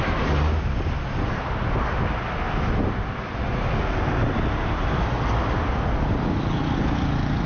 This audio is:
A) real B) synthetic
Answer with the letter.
A